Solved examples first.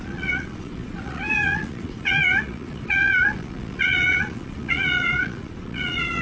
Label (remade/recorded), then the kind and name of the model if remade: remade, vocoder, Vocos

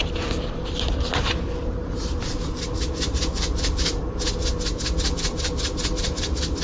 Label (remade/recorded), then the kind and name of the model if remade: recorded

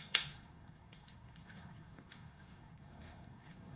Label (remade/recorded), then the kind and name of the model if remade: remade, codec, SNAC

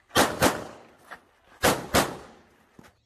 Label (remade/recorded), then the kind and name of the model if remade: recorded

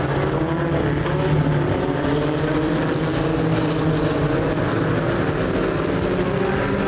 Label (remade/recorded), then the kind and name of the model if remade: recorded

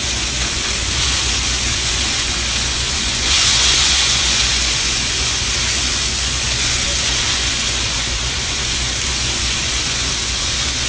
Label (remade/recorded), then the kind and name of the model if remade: remade, vocoder, Vocos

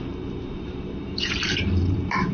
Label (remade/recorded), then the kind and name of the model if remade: remade, vocoder, BigVGAN v2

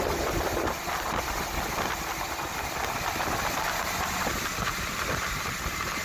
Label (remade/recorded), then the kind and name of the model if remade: recorded